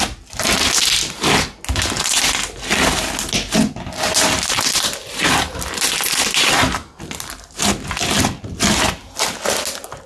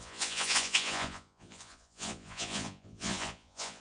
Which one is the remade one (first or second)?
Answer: second